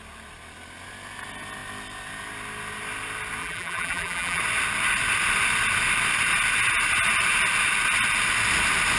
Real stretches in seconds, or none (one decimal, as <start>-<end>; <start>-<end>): 0.0-3.4; 4.4-9.0